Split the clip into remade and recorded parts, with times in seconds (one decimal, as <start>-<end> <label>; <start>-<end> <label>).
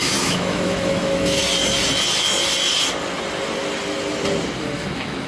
0.0-1.4 remade; 1.4-4.6 recorded; 4.6-5.3 remade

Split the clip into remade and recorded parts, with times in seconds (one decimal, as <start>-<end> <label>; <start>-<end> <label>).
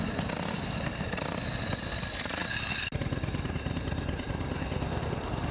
0.0-5.5 recorded